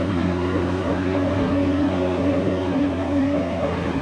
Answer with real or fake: fake